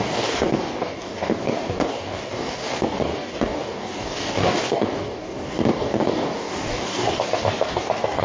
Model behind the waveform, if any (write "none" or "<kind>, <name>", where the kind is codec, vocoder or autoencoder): codec, DAC